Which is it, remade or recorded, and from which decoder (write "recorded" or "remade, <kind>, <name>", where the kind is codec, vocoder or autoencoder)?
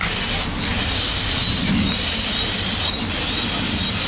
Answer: recorded